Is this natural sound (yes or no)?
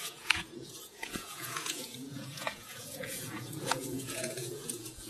no